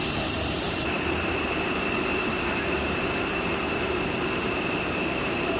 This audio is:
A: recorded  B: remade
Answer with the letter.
B